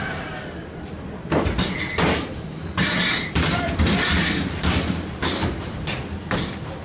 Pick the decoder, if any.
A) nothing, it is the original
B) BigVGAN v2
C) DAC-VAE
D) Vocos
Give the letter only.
A